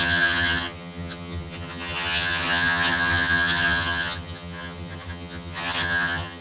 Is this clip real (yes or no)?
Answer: no